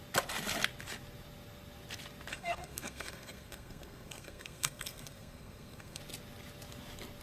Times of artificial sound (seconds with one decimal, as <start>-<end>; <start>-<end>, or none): 2.3-6.0